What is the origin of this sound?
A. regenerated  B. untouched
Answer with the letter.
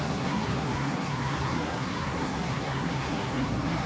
A